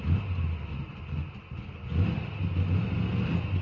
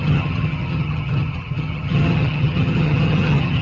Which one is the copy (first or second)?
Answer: second